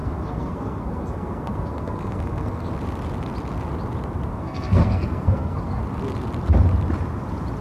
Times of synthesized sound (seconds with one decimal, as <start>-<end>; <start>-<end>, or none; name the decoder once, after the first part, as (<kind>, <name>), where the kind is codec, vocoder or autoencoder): 0.0-2.7 (codec, SNAC); 4.3-5.8